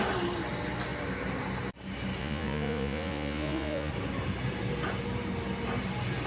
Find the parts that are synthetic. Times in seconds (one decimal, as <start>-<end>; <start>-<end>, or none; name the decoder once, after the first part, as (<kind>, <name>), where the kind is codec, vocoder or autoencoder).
2.2-3.9 (vocoder, Vocos)